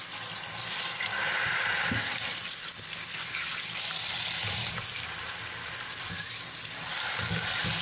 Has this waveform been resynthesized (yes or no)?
no